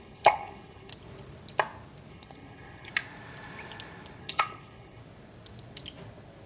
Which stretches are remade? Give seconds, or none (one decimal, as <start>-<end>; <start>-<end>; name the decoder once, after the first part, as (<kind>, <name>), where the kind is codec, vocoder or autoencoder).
0.0-0.9 (codec, HILCodec); 2.1-2.9; 4.2-5.0